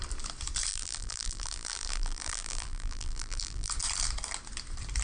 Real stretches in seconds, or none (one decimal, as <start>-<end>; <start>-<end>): 0.0-0.7; 3.7-5.0